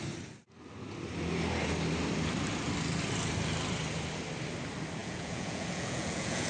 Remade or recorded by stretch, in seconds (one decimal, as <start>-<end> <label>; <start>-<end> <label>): 0.0-5.0 recorded; 5.0-6.5 remade